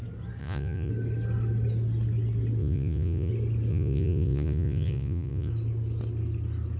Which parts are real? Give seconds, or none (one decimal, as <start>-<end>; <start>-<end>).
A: 0.0-0.4; 0.9-2.6; 3.3-3.7; 5.5-6.8